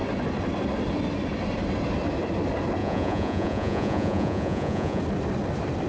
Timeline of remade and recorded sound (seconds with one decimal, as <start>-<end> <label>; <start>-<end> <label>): 0.0-2.8 recorded; 2.8-5.0 remade; 5.0-5.9 recorded